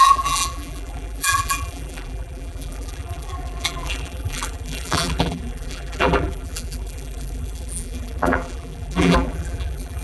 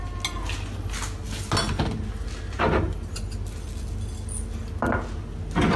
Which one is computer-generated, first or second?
first